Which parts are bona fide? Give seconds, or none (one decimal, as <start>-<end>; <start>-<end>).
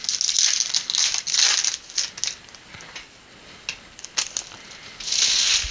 0.0-5.7